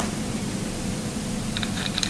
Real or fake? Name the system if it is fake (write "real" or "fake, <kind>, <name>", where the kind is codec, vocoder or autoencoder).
fake, vocoder, BigVGAN v2